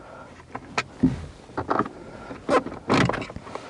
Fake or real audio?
real